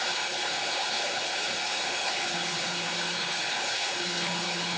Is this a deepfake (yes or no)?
yes